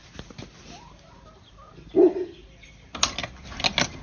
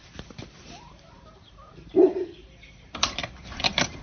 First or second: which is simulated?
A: second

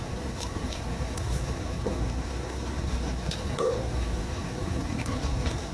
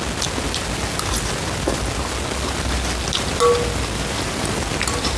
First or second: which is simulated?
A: first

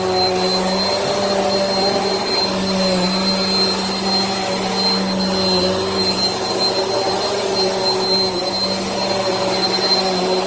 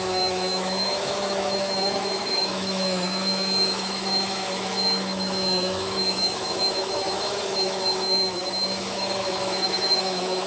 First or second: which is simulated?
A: second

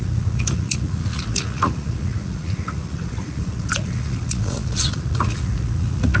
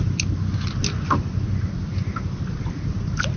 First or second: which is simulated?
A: first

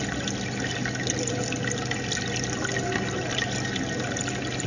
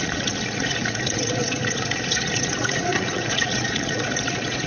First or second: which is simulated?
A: second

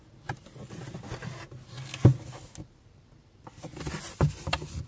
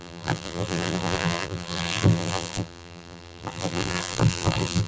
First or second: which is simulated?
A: second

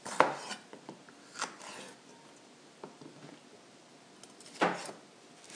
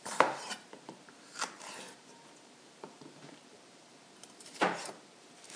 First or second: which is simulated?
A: second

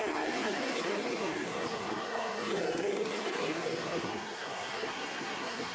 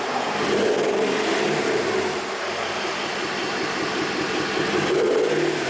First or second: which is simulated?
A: first